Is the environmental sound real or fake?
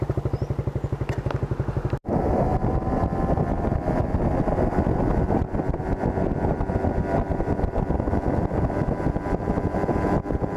real